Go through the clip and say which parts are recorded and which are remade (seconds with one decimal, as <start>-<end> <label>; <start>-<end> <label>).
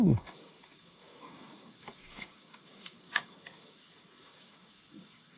0.0-5.4 remade